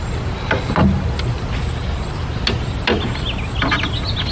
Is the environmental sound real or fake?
real